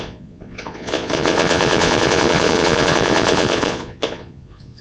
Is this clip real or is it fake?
fake